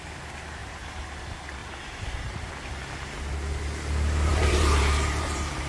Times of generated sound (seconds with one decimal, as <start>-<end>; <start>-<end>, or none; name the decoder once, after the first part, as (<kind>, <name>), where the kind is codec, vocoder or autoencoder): 0.6-1.2 (vocoder, BigVGAN v2); 1.6-2.5; 4.3-5.7